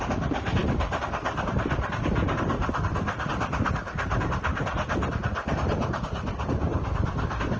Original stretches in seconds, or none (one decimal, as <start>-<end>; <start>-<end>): 0.0-7.6